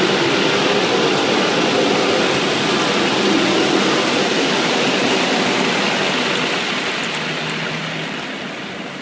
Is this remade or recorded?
recorded